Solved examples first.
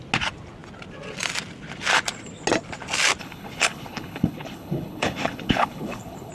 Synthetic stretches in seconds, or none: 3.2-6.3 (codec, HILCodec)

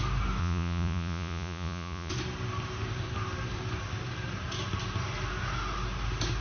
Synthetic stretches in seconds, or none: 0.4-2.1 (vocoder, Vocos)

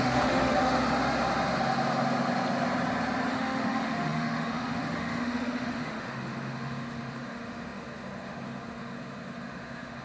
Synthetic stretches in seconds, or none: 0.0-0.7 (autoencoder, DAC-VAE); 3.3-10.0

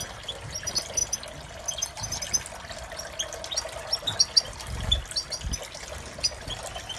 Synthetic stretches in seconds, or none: none